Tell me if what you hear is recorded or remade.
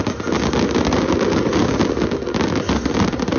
recorded